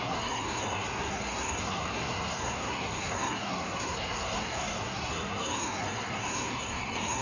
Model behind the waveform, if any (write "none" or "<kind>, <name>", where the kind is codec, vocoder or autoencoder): codec, SNAC